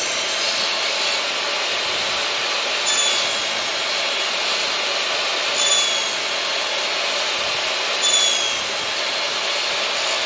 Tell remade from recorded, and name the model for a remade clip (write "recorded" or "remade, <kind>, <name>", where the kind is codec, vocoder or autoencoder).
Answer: recorded